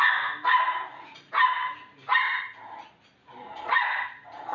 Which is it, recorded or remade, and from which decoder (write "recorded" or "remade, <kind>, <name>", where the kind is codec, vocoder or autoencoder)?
recorded